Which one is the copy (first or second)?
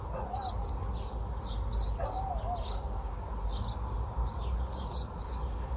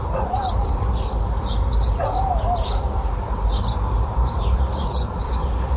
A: second